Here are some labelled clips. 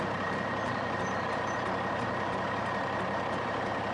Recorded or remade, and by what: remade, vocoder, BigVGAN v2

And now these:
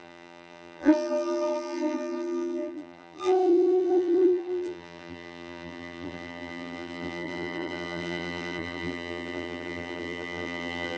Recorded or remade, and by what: remade, vocoder, BigVGAN v2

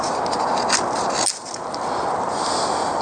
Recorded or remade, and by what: recorded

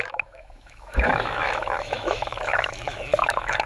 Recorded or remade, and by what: remade, autoencoder, DAC-VAE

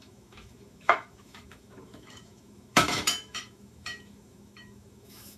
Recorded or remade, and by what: remade, autoencoder, DAC-VAE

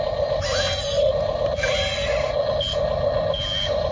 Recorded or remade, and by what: recorded